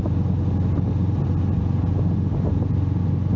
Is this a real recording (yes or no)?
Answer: yes